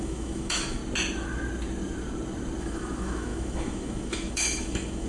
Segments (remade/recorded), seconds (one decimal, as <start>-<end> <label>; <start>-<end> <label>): 0.0-0.8 remade; 0.8-2.6 recorded; 2.6-5.1 remade